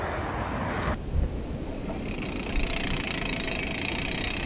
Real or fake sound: real